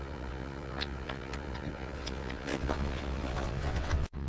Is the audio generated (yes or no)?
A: yes